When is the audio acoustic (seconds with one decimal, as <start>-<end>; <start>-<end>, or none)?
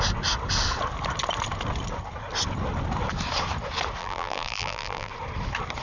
0.0-4.0; 5.1-5.8